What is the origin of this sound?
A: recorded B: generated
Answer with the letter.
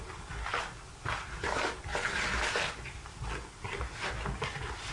A